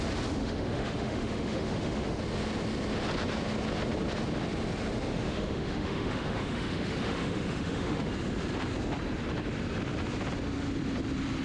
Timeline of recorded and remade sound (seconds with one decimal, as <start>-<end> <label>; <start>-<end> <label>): 0.0-0.4 recorded; 0.4-2.2 remade; 2.2-5.1 recorded; 5.1-8.1 remade; 8.1-11.4 recorded